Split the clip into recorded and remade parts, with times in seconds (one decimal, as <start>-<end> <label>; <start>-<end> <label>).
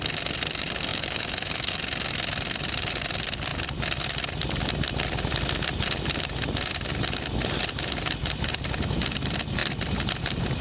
0.0-0.9 recorded; 0.9-1.7 remade; 1.7-10.6 recorded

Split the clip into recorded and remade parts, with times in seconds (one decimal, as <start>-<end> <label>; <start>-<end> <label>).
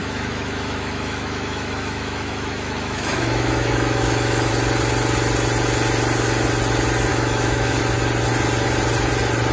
0.0-4.5 remade; 4.5-7.1 recorded; 7.1-7.8 remade; 7.8-9.5 recorded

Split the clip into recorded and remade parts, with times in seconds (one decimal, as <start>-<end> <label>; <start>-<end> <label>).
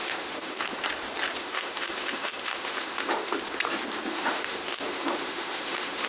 0.0-0.6 remade; 0.6-1.4 recorded; 1.4-3.4 remade; 3.4-4.1 recorded; 4.1-6.1 remade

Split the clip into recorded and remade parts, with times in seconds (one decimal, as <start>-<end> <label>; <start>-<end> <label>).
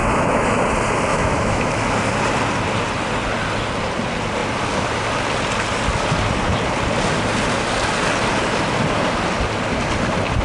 0.0-0.6 remade; 0.6-1.1 recorded; 1.1-1.7 remade; 1.7-10.4 recorded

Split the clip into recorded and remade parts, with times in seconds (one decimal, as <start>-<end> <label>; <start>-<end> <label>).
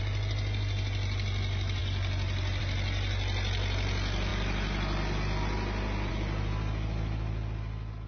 0.0-8.1 recorded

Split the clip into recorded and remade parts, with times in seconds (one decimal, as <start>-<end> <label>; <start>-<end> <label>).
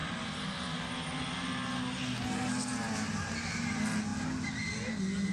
0.0-5.3 recorded